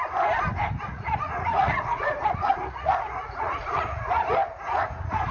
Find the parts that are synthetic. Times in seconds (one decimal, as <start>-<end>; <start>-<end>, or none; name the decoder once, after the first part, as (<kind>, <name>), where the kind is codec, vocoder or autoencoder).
0.9-4.1 (vocoder, Vocos)